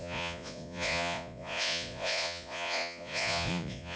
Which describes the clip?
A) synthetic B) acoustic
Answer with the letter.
A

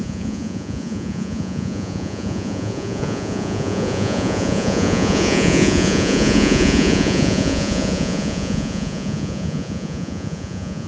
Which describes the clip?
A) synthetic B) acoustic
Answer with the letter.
A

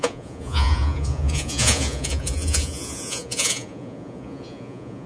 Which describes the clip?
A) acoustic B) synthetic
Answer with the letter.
B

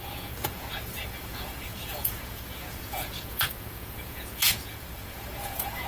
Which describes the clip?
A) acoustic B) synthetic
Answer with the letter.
B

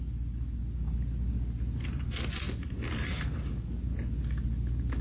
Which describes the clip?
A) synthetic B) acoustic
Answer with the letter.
B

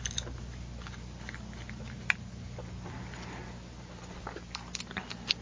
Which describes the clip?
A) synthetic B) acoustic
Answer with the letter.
B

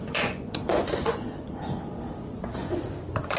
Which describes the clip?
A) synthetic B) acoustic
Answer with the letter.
A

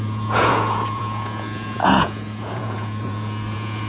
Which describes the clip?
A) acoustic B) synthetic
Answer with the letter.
B